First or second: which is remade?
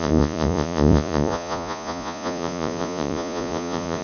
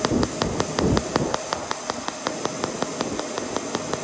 first